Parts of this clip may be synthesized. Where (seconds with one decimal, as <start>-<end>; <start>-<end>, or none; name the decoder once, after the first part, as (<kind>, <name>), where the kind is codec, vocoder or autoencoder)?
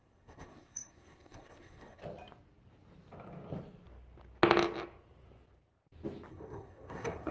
0.0-2.0 (codec, SNAC); 6.3-7.3